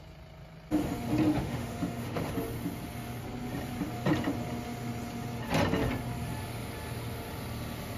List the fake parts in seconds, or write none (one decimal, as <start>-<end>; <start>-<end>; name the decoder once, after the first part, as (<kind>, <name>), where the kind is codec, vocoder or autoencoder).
1.3-2.3 (autoencoder, DAC-VAE)